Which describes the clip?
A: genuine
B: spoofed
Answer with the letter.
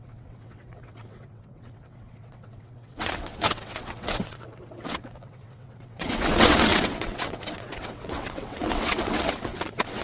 B